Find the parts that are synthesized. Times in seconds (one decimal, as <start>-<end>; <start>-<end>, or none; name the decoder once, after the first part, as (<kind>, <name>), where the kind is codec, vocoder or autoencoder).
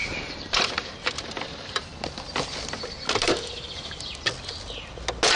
0.0-1.9 (vocoder, BigVGAN v2)